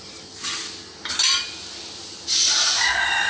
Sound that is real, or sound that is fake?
real